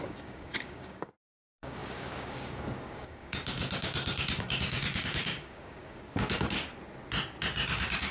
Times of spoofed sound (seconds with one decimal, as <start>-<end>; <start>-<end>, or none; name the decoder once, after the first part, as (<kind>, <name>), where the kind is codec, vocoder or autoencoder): 0.0-6.7 (codec, DAC); 7.5-8.1